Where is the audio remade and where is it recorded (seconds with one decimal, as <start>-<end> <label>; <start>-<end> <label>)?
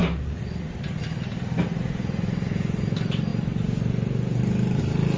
0.0-5.2 recorded